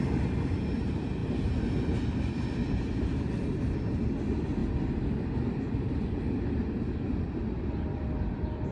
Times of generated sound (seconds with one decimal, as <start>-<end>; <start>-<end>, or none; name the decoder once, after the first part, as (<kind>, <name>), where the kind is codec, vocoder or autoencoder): none